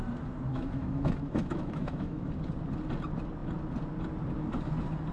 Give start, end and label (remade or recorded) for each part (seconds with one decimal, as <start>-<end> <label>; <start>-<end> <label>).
0.0-0.5 recorded; 0.5-2.3 remade; 2.3-5.1 recorded